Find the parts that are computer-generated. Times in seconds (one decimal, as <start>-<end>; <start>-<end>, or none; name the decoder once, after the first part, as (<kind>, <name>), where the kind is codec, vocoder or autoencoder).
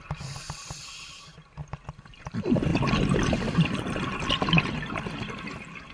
none